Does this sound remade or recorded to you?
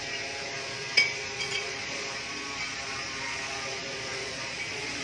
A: remade